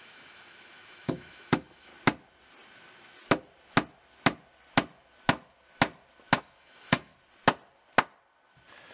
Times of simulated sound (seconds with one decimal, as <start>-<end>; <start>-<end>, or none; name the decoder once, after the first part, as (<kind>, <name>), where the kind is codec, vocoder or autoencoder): 0.0-1.9 (autoencoder, DAC-VAE); 6.4-7.1